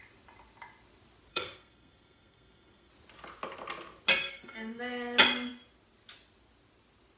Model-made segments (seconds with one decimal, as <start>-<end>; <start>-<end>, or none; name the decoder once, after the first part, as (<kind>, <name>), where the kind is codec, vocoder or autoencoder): 1.3-2.9 (codec, SNAC); 4.2-4.8